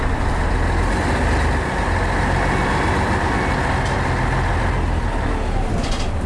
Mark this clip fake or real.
real